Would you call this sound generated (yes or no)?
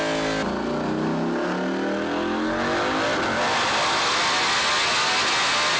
no